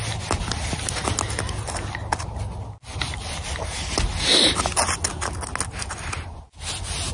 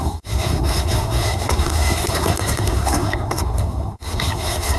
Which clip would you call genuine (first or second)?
first